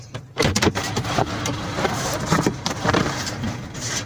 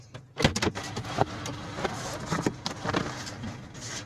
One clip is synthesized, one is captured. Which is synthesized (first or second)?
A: first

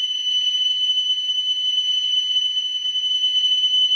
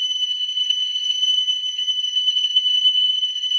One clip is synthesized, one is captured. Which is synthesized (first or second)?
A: second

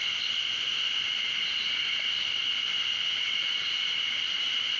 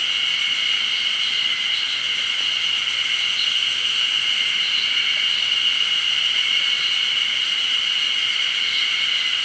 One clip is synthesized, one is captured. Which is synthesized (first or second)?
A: first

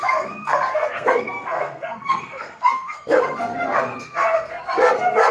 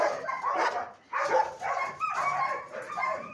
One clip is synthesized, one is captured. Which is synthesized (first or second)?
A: first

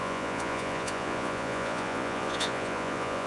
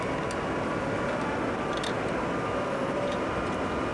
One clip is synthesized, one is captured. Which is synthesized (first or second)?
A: first